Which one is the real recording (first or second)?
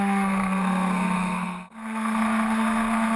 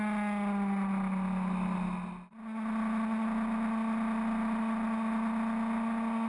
second